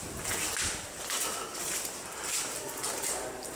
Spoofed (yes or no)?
no